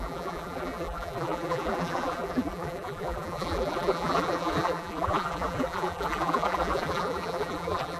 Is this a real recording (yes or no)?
no